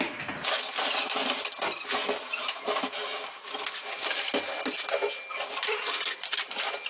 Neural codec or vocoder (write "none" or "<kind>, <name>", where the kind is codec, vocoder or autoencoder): none